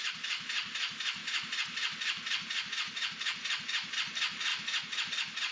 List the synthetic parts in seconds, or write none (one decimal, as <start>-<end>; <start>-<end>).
none